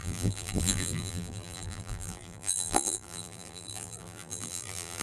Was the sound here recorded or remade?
remade